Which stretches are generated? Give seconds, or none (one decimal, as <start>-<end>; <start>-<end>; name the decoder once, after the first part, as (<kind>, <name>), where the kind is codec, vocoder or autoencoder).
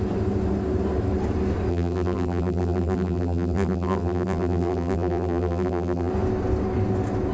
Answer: 1.7-6.1 (vocoder, BigVGAN v2)